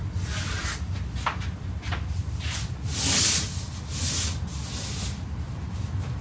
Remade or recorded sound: recorded